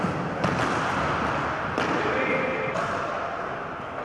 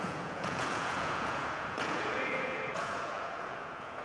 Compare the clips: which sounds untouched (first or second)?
first